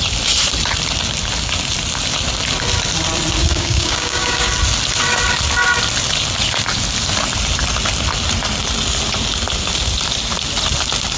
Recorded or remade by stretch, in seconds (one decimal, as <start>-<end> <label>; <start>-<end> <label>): 0.0-3.4 recorded; 3.4-4.5 remade; 4.5-11.2 recorded